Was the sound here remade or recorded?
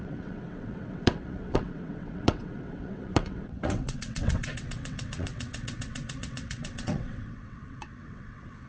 remade